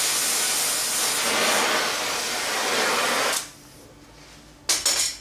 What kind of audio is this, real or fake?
real